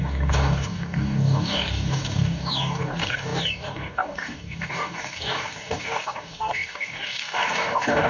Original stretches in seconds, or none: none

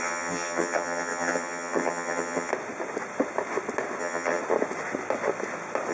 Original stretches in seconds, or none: 2.5-4.0; 4.4-5.9

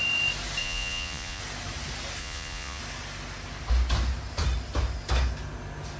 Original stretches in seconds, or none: 0.0-0.6; 1.4-2.2; 2.8-6.0

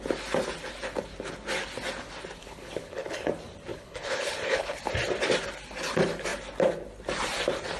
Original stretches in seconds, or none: 0.0-2.4; 3.3-3.7; 4.8-7.8

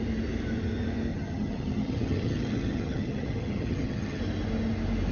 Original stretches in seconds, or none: 0.0-1.1; 4.2-5.1

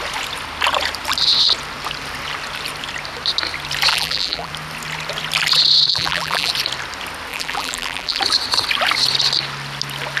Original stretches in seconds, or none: 0.0-3.9; 4.5-5.9; 6.5-7.3; 8.2-10.2

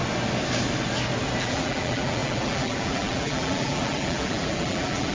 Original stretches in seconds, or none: 0.0-1.4

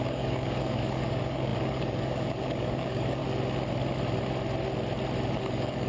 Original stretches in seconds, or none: 3.2-5.4